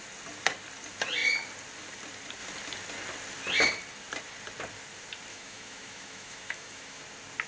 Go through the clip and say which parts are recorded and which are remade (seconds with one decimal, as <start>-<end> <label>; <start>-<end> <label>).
0.0-5.3 recorded; 5.3-7.0 remade; 7.0-7.5 recorded